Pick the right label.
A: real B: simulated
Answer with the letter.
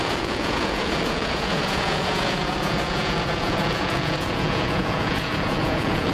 B